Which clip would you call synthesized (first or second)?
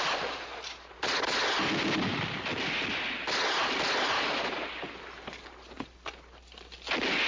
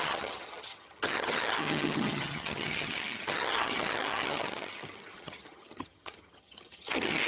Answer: second